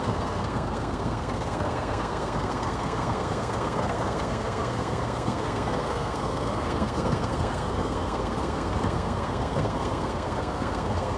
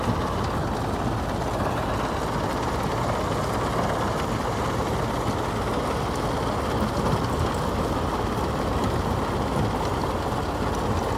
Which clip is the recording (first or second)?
second